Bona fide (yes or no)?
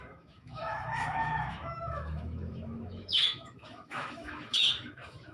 no